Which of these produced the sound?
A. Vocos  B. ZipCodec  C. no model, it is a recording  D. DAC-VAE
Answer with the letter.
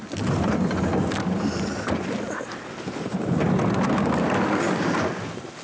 C